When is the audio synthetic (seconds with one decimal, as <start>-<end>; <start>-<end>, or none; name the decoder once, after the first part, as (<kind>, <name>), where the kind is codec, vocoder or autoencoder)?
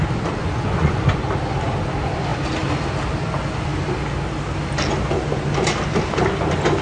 0.4-1.0 (vocoder, Vocos)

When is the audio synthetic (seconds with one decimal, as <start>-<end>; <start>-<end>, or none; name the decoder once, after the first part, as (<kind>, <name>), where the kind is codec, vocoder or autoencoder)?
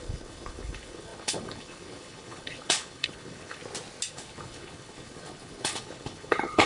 0.0-3.6 (codec, HILCodec); 4.1-6.7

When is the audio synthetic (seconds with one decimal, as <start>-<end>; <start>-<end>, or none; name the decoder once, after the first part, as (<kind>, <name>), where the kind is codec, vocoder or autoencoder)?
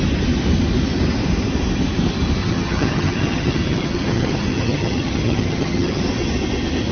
2.4-6.0 (vocoder, HiFi-GAN)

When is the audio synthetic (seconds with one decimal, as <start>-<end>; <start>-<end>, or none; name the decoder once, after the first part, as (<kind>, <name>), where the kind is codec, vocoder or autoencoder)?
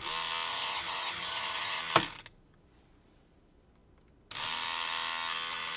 0.5-1.8 (vocoder, HiFi-GAN)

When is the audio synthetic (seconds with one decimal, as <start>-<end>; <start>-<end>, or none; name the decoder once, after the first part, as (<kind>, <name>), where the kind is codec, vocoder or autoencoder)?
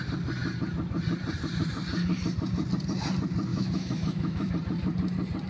3.5-4.5 (autoencoder, DAC-VAE)